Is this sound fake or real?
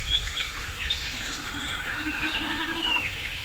fake